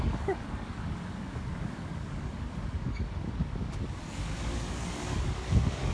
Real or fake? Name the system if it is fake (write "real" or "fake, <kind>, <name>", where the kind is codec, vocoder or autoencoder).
fake, codec, DAC